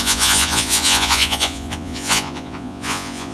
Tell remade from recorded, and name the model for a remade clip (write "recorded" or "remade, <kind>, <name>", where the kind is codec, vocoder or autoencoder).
remade, vocoder, Vocos